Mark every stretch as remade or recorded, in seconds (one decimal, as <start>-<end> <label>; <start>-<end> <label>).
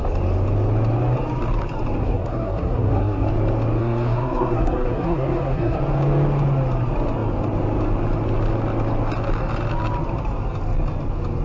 0.0-2.0 recorded; 2.0-3.3 remade; 3.3-3.8 recorded; 3.8-5.8 remade; 5.8-11.4 recorded